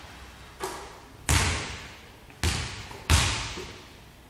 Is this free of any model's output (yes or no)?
yes